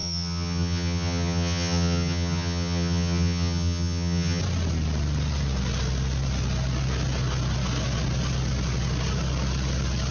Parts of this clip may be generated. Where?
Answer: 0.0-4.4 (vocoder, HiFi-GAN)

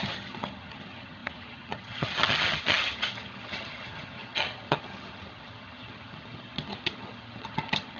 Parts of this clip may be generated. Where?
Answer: 0.0-8.0 (vocoder, HiFi-GAN)

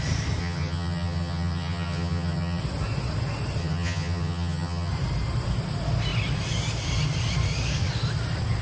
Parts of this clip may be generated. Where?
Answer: 0.4-2.6 (vocoder, HiFi-GAN); 3.6-4.9

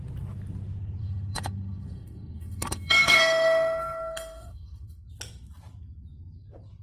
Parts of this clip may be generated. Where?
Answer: 1.0-5.1 (autoencoder, DAC-VAE)